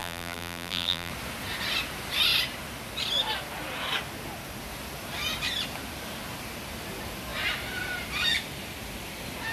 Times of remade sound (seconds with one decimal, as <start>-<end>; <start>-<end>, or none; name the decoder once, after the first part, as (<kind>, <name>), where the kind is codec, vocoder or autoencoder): 0.0-1.1 (vocoder, BigVGAN v2)